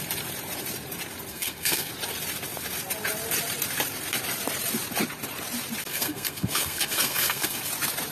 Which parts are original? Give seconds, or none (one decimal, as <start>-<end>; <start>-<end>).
0.0-1.3; 1.9-5.9; 7.6-8.1